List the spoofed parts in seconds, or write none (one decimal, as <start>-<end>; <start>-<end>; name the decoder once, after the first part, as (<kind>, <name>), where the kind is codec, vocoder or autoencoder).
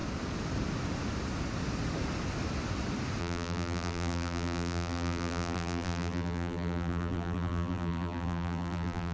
3.2-9.1 (vocoder, BigVGAN v2)